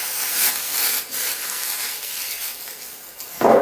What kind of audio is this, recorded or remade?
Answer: remade